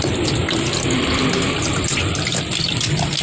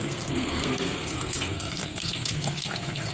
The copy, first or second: second